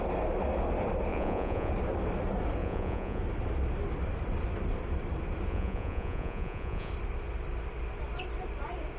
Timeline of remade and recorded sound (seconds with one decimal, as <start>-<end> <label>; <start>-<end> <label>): 0.0-1.1 recorded; 1.1-1.7 remade; 1.7-2.6 recorded; 2.6-3.2 remade; 3.2-5.5 recorded; 5.5-6.9 remade; 6.9-9.0 recorded